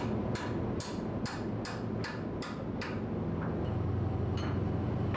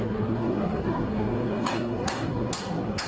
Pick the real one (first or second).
first